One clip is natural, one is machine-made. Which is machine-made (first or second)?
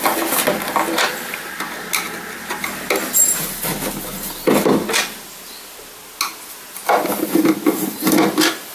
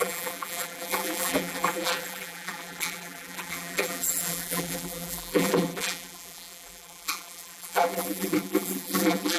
second